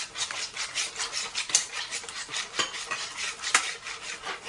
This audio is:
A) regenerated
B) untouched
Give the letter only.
B